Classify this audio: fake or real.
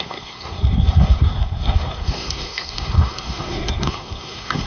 fake